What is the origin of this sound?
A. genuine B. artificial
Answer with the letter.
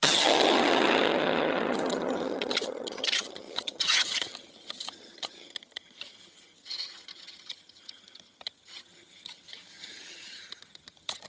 B